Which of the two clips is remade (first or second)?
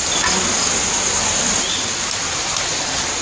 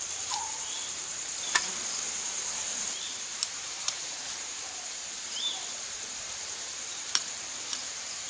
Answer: second